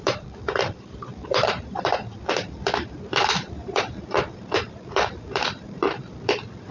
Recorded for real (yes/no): no